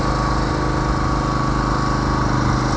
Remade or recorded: recorded